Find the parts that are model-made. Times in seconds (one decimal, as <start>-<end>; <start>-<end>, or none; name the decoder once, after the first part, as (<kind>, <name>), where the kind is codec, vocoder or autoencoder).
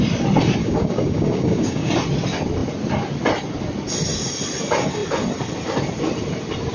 0.6-1.9 (codec, DAC)